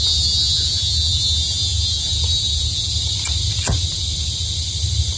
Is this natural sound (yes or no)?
yes